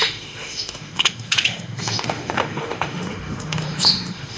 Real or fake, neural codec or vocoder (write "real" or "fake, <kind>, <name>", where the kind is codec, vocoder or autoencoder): fake, autoencoder, DAC-VAE